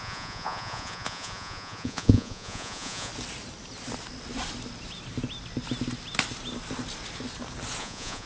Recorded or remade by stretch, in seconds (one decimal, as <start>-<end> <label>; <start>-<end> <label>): 0.0-3.1 remade; 3.1-7.8 recorded; 7.8-8.3 remade